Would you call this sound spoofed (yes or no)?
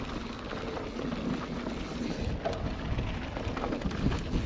no